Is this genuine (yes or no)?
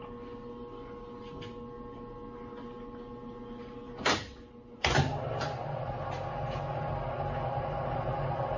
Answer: yes